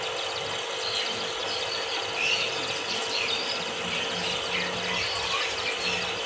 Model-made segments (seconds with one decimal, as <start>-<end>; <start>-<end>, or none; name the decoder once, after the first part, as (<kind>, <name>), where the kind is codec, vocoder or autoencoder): none